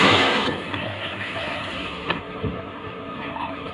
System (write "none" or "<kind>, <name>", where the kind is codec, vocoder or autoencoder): codec, SNAC